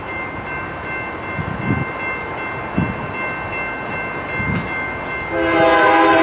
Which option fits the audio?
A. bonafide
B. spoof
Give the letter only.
A